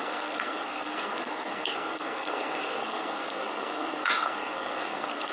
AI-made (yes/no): yes